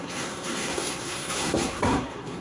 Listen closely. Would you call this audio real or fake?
fake